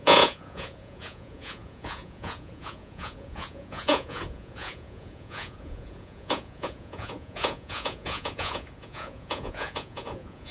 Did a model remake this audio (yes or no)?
yes